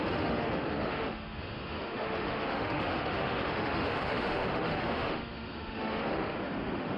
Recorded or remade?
remade